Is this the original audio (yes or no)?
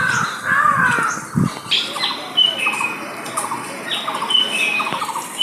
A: yes